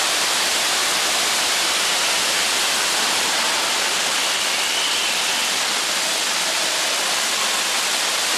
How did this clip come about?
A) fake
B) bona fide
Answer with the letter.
B